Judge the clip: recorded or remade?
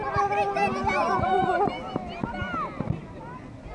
recorded